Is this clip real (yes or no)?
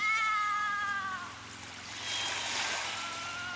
yes